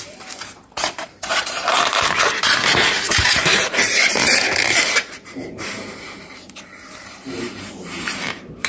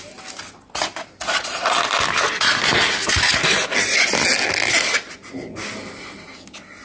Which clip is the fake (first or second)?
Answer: first